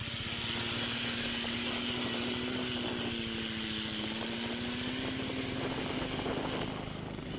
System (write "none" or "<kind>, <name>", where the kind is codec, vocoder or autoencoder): none